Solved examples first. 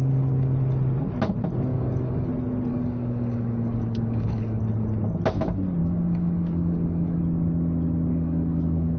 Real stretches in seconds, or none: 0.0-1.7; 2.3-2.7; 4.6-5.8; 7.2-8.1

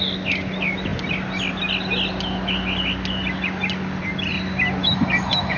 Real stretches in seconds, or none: 0.0-4.8

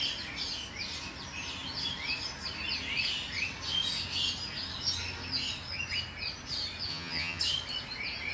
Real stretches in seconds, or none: 0.0-6.9; 7.4-8.3

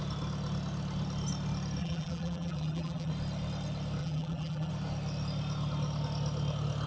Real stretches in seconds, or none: 0.0-1.8; 3.1-4.0; 4.7-6.9